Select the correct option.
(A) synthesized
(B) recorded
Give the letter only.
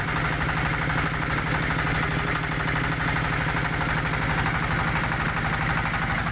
B